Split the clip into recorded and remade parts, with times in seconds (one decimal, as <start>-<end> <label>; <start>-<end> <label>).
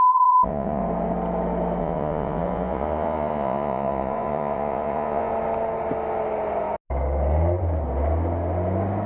0.0-0.8 remade; 0.8-1.8 recorded; 1.8-5.3 remade; 5.3-9.1 recorded